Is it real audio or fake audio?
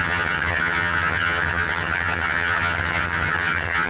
fake